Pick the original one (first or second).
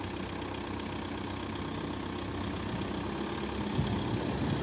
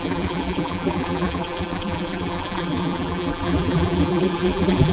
first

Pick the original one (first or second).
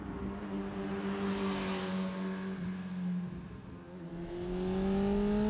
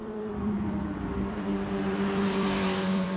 first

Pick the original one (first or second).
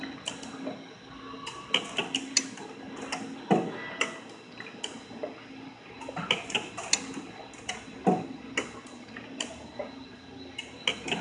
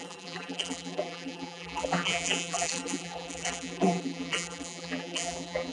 first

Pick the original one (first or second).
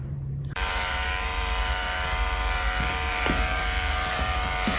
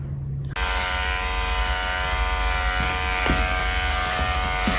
second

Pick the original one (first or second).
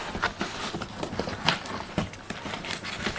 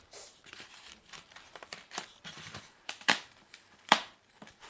first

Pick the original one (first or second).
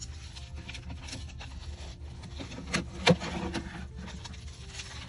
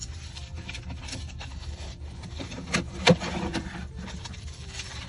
first